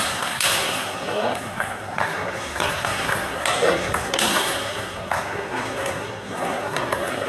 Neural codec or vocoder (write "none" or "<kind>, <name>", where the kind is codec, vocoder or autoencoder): codec, SNAC